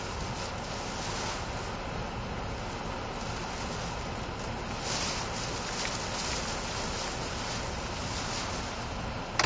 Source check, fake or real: real